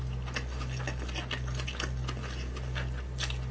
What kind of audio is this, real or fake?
real